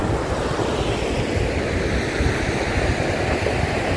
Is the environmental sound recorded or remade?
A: recorded